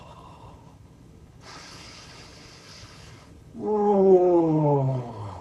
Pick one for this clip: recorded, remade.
remade